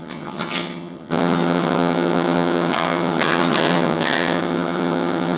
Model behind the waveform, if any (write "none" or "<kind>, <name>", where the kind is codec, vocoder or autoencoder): vocoder, HiFi-GAN